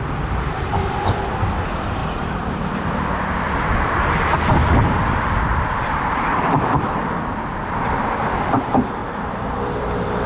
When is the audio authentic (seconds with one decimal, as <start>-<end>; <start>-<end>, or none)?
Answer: 9.0-9.7